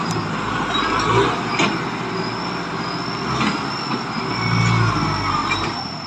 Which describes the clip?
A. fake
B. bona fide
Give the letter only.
B